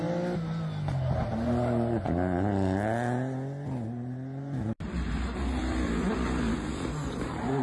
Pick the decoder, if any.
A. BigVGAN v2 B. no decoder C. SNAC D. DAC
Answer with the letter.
B